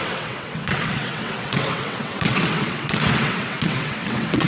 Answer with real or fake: fake